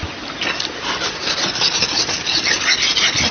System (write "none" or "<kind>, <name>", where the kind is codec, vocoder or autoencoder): none